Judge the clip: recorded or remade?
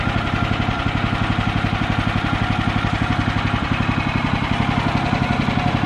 recorded